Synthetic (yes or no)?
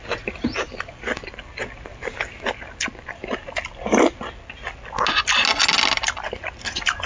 no